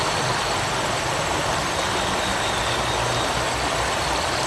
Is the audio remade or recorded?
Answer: recorded